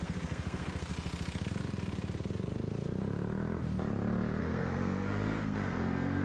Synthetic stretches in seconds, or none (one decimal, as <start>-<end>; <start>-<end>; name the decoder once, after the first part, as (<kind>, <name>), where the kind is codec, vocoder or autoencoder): 0.0-0.9 (codec, SNAC); 4.4-6.2